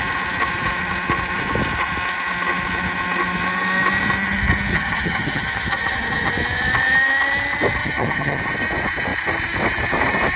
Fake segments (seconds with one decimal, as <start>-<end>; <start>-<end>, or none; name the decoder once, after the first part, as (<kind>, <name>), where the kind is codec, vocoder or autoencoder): 4.7-6.3 (vocoder, HiFi-GAN); 7.8-8.4